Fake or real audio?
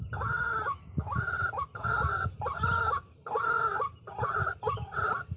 real